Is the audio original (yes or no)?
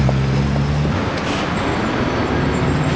yes